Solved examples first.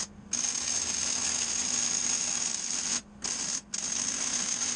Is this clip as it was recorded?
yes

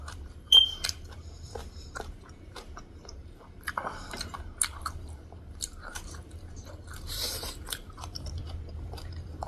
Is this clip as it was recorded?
no